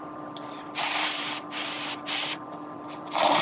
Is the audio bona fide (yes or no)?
no